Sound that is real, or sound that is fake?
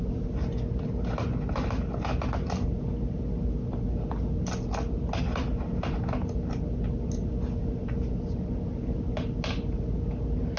real